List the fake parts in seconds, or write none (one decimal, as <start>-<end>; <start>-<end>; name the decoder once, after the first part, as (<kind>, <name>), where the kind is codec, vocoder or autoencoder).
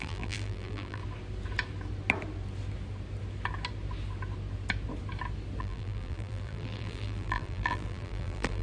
0.0-1.0 (vocoder, BigVGAN v2); 5.6-8.6